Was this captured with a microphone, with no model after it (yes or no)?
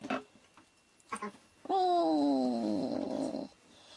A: yes